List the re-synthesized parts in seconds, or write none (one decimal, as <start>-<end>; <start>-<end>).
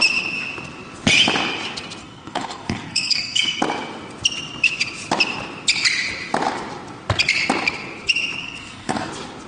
2.0-3.6; 8.4-9.1